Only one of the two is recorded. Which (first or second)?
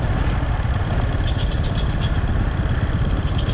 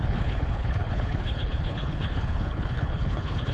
first